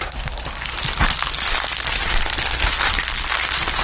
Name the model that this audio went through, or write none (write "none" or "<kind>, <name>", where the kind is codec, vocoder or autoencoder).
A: none